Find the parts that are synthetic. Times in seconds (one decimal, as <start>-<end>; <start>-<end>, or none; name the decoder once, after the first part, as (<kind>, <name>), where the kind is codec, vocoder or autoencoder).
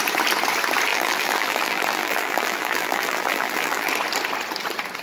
0.9-3.9 (vocoder, BigVGAN v2)